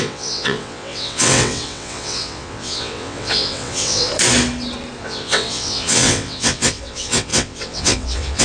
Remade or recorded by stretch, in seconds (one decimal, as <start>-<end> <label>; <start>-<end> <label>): 0.0-4.1 remade; 4.1-5.0 recorded; 5.0-8.4 remade